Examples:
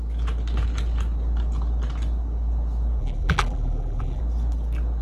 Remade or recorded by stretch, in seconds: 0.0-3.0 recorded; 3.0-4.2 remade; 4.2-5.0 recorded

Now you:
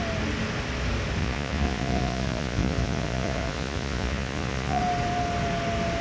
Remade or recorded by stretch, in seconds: 0.0-1.2 recorded; 1.2-4.8 remade; 4.8-6.0 recorded

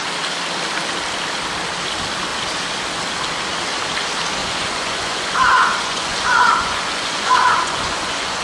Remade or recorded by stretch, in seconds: 0.0-4.4 recorded; 4.4-8.4 remade

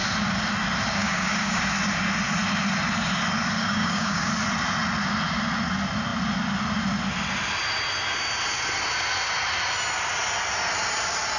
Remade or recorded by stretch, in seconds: 0.0-1.0 recorded; 1.0-1.6 remade; 1.6-3.6 recorded; 3.6-4.3 remade; 4.3-11.4 recorded

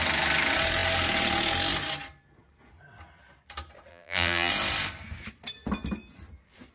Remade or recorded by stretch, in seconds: 0.0-3.9 recorded; 3.9-4.5 remade; 4.5-6.7 recorded

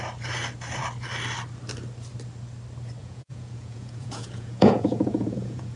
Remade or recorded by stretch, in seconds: 0.0-3.0 recorded; 3.0-5.8 remade

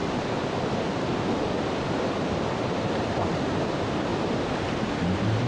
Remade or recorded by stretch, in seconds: 0.0-5.5 recorded